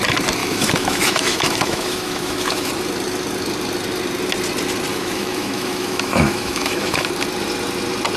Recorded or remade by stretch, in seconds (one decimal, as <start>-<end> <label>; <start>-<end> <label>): 0.0-0.4 recorded; 0.4-2.7 remade; 2.7-4.9 recorded; 4.9-7.1 remade; 7.1-8.2 recorded